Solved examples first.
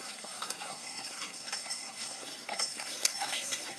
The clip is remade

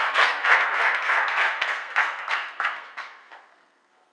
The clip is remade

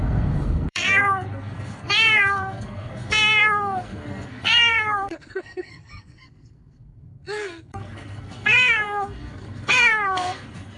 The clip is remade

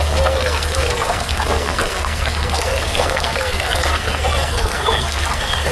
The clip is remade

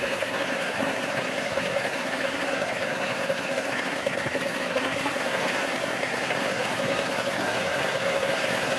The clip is remade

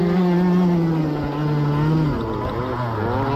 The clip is recorded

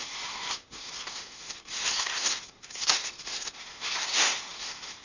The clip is remade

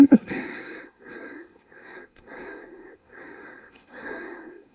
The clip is remade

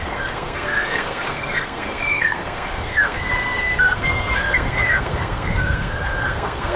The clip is remade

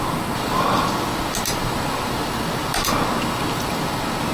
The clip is recorded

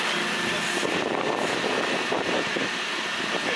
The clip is recorded